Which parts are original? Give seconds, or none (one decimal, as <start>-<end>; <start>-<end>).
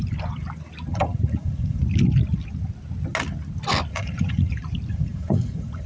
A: 0.0-0.9; 1.8-3.9; 4.5-4.9